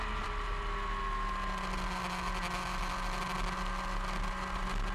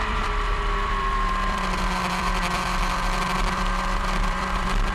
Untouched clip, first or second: first